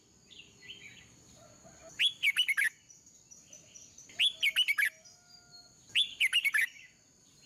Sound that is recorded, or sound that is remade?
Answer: recorded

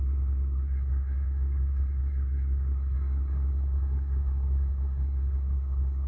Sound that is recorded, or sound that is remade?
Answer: remade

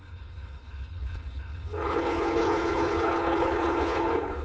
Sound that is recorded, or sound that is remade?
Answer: remade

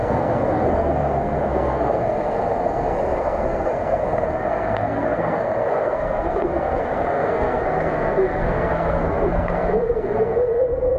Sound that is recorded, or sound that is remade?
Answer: remade